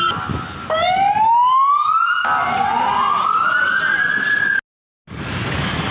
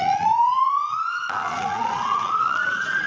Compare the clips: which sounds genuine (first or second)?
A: first